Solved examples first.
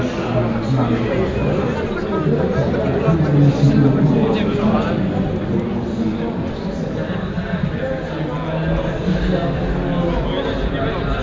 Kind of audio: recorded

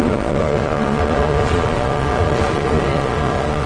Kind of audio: remade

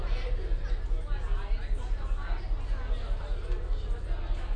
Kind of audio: recorded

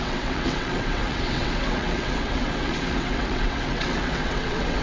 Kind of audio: remade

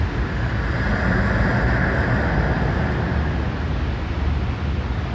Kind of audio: recorded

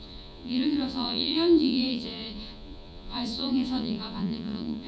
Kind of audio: remade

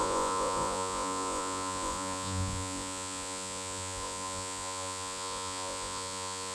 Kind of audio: remade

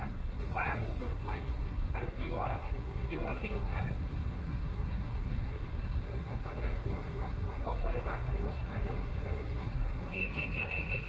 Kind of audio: remade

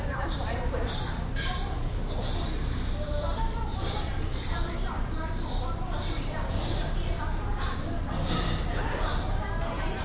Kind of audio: remade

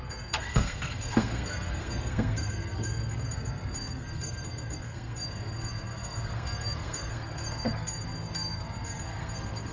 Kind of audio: remade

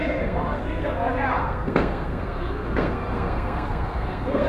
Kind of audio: remade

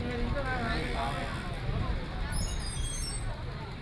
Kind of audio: recorded